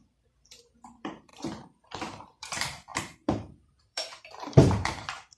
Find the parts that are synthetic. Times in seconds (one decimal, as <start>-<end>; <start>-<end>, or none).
0.0-5.4